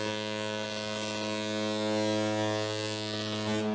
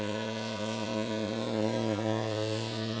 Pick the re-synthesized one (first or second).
second